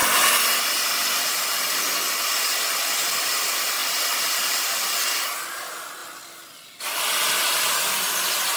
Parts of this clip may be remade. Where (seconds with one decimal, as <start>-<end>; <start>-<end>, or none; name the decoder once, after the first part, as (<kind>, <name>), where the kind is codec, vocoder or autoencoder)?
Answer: none